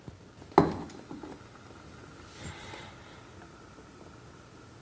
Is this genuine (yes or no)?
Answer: yes